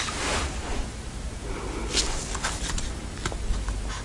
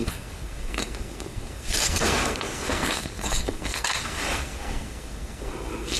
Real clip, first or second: first